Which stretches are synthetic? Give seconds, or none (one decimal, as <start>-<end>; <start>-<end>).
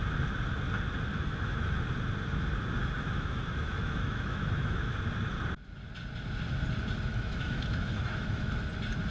1.1-1.8; 2.8-4.9; 7.1-8.5